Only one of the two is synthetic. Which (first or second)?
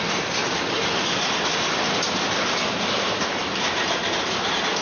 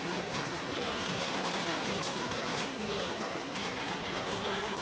second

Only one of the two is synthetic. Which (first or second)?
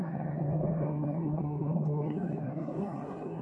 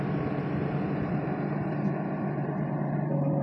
first